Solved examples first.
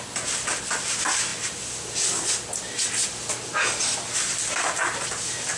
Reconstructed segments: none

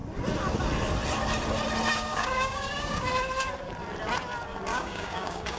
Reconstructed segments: 1.9-3.1 (codec, DAC); 4.7-5.6

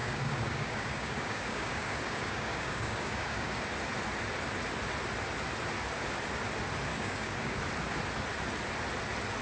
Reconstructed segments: 0.0-3.6 (codec, DAC); 6.9-7.6

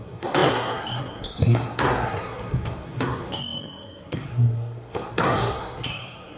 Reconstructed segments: 0.0-6.4 (codec, SNAC)

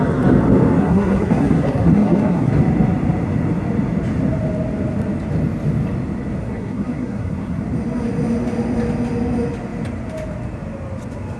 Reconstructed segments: 0.8-2.5 (codec, SNAC); 6.4-7.6

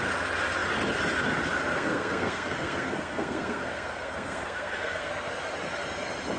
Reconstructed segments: 1.7-5.1 (codec, SNAC)

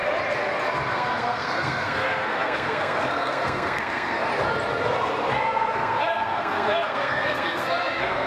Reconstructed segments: 0.9-4.3 (codec, SNAC); 5.4-8.3